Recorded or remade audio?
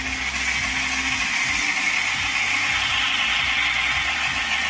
recorded